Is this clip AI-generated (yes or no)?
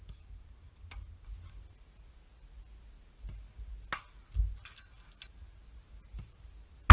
no